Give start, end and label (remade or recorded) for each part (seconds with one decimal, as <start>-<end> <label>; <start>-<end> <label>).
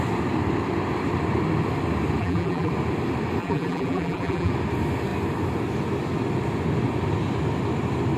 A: 0.0-2.2 recorded; 2.2-2.7 remade; 2.7-3.4 recorded; 3.4-4.5 remade; 4.5-8.2 recorded